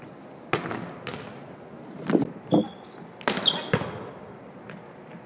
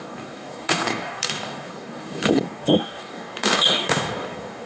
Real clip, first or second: first